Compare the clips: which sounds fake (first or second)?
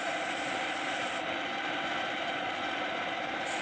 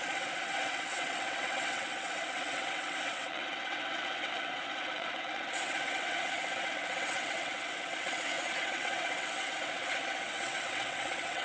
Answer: second